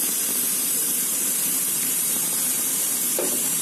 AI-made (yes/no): yes